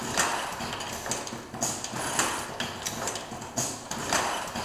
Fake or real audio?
real